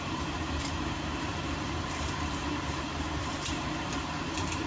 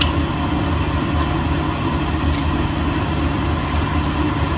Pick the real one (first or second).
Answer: second